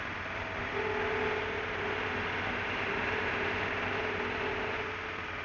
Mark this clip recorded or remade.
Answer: recorded